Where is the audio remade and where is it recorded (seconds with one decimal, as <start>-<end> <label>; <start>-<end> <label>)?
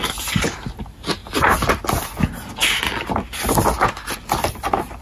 0.0-5.0 recorded